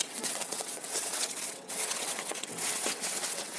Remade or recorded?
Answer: remade